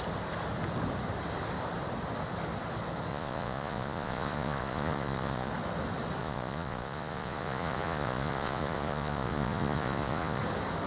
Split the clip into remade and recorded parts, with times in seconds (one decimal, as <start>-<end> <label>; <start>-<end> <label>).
0.0-3.1 recorded; 3.1-5.5 remade; 5.5-6.2 recorded; 6.2-10.4 remade; 10.4-10.9 recorded